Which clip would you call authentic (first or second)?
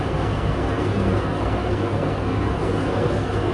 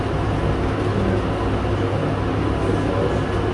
second